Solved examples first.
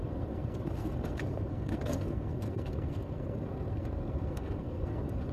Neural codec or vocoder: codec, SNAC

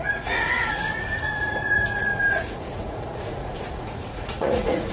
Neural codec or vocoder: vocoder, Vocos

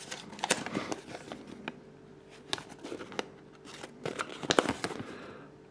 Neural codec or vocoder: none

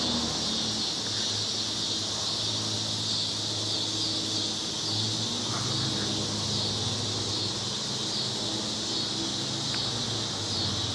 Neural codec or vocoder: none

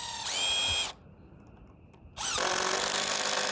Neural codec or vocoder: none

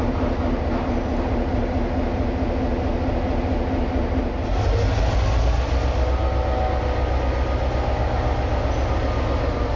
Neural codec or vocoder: none